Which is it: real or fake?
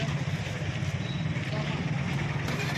real